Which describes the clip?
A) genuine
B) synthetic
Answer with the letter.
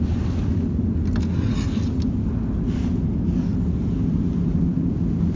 A